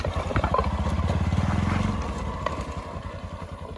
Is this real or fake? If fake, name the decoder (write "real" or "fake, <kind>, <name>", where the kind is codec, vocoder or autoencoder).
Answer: real